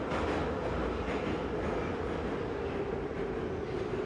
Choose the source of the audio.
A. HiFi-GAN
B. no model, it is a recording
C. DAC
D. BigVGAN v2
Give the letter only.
B